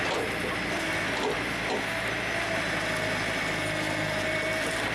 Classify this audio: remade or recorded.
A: recorded